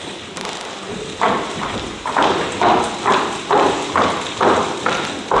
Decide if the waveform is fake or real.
real